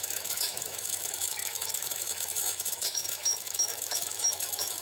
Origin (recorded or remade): remade